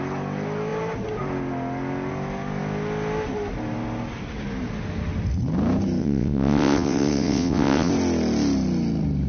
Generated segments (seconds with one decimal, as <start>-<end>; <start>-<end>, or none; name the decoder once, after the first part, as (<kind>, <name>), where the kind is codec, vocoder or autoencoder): 6.0-7.9 (vocoder, WaveNeXt)